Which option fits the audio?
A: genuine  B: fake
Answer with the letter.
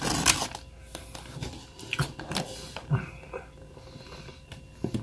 A